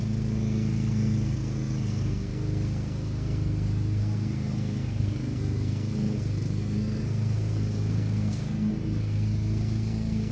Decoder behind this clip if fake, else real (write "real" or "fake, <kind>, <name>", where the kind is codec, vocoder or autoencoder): fake, codec, SNAC